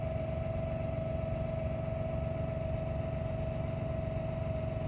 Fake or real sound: real